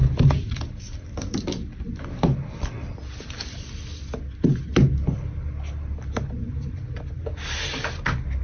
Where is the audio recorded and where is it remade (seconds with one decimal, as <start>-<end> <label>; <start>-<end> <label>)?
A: 0.0-3.1 remade; 3.1-8.4 recorded